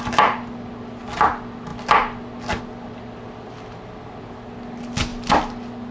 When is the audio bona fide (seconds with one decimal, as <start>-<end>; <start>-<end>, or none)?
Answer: 0.0-5.9